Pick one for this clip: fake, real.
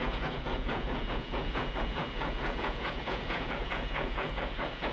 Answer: fake